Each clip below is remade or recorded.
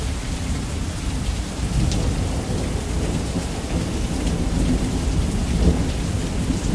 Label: recorded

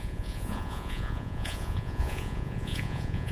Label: remade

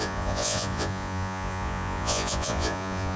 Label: remade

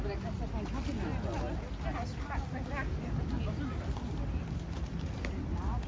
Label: recorded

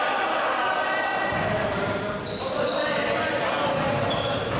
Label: recorded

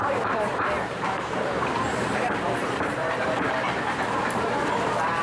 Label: remade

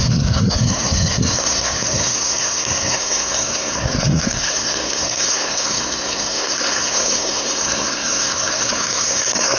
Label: remade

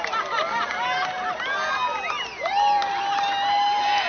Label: recorded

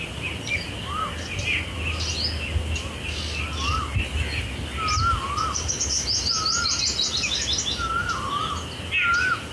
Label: recorded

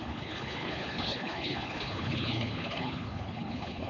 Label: remade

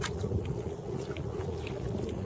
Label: remade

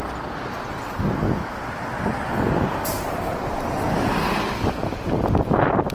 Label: recorded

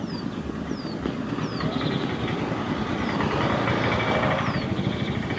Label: recorded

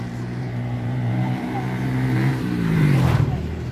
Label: remade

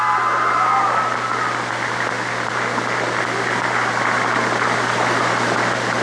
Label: recorded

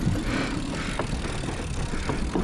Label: recorded